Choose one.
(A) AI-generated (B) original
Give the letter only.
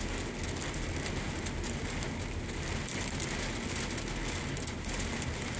B